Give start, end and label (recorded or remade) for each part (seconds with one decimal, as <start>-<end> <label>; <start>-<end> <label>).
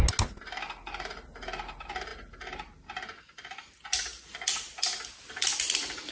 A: 0.0-6.1 recorded